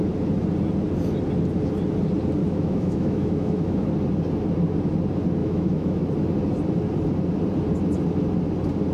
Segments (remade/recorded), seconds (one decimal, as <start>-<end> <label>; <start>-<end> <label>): 0.0-2.4 recorded; 2.4-3.9 remade; 3.9-5.4 recorded; 5.4-6.0 remade; 6.0-8.9 recorded